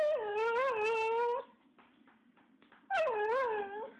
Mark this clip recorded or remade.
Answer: recorded